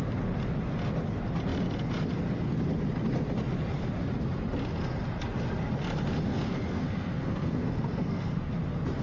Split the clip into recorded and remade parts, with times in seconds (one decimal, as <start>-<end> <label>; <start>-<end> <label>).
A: 0.0-6.3 recorded; 6.3-8.5 remade; 8.5-9.0 recorded